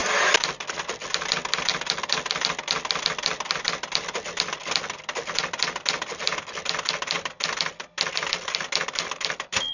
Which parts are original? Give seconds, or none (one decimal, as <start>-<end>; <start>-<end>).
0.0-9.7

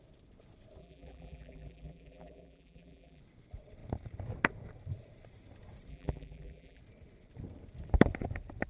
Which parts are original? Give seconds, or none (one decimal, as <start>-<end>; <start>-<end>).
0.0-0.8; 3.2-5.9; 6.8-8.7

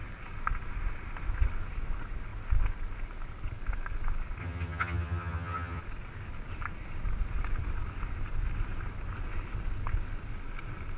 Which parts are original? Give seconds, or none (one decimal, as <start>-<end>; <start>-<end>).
0.0-4.4; 5.8-11.0

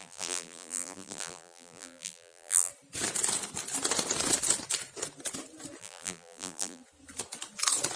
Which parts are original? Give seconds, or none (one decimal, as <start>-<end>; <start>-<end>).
2.7-5.8; 6.8-8.0

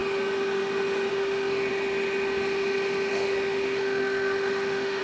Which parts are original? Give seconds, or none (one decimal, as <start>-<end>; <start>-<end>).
0.0-1.1; 1.7-3.1

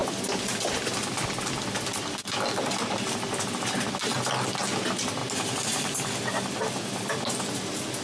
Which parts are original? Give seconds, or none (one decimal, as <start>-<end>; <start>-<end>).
0.0-8.0

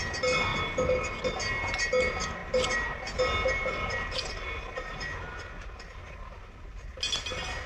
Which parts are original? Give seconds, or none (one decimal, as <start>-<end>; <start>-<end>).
0.0-7.7

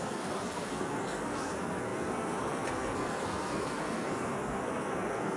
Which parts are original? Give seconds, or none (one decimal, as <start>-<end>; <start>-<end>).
none